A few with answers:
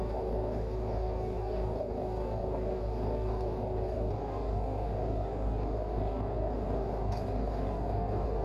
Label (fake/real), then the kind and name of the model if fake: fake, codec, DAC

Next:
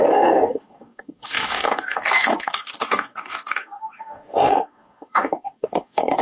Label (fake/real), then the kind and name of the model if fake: fake, codec, DAC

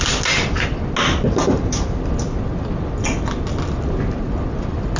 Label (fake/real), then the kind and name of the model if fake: real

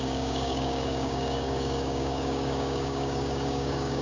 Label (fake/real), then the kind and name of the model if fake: fake, codec, DAC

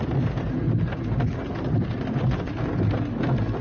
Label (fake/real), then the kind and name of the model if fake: real